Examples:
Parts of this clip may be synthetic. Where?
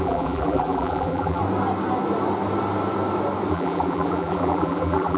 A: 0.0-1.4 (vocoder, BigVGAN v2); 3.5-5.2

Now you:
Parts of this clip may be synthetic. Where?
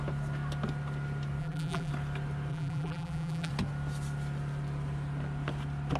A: 1.4-1.9 (vocoder, BigVGAN v2); 2.5-3.5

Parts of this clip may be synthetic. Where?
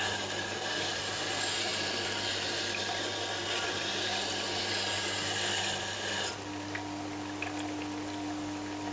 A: none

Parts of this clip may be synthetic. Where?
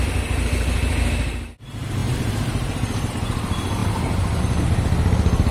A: 2.0-3.1 (vocoder, BigVGAN v2)